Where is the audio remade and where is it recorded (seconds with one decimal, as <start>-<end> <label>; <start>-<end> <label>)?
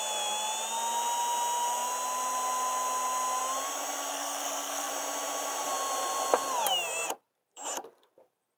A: 0.0-4.1 recorded; 4.1-4.9 remade; 4.9-8.6 recorded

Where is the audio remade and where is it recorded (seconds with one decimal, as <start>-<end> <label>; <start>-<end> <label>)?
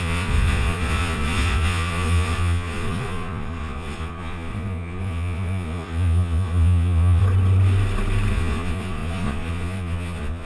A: 0.0-7.2 remade; 7.2-8.3 recorded; 8.3-10.5 remade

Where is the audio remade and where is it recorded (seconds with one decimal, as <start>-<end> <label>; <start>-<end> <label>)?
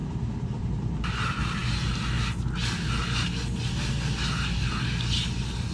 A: 0.0-5.7 recorded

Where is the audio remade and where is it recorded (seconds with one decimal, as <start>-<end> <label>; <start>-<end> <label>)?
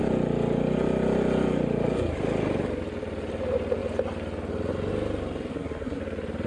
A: 0.0-5.5 recorded; 5.5-6.0 remade; 6.0-6.5 recorded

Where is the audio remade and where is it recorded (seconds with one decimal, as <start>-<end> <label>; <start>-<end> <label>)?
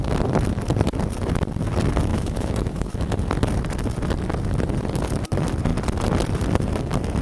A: 0.0-2.1 recorded; 2.1-2.9 remade; 2.9-7.2 recorded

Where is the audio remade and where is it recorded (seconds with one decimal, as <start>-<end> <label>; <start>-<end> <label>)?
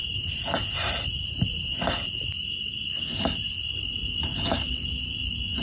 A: 0.0-5.6 recorded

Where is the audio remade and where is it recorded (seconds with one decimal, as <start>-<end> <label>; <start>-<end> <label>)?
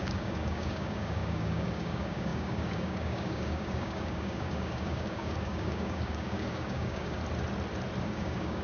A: 0.0-7.2 remade; 7.2-8.0 recorded; 8.0-8.6 remade